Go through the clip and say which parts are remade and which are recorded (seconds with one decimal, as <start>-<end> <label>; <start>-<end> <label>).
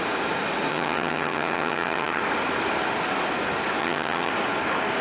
0.0-0.7 recorded; 0.7-2.2 remade; 2.2-3.8 recorded; 3.8-4.3 remade; 4.3-5.0 recorded